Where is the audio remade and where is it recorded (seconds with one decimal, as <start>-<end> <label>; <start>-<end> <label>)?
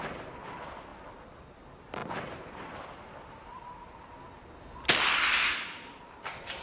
0.0-6.6 recorded